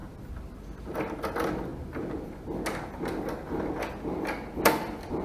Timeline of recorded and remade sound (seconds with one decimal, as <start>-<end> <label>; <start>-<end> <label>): 0.0-5.2 recorded